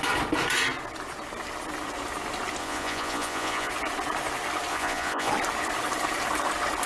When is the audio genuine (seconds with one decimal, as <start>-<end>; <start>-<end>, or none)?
0.0-2.6; 3.7-4.7; 5.3-6.9